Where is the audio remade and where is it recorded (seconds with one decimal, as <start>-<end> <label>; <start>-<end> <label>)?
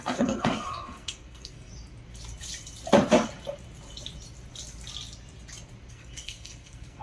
0.0-1.7 remade; 1.7-5.9 recorded; 5.9-7.0 remade